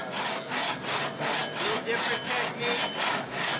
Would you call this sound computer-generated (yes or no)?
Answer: no